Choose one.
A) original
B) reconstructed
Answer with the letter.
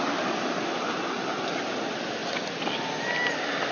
A